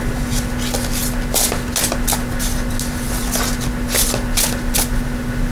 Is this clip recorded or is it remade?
recorded